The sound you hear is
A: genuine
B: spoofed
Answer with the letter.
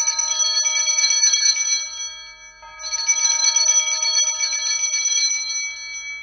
A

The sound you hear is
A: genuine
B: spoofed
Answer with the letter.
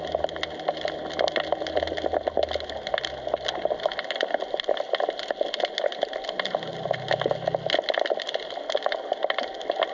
A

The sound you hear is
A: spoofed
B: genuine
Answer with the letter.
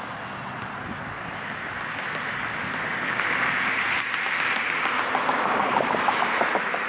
B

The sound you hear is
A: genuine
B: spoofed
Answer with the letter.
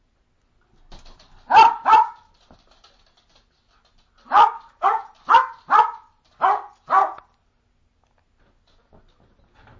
A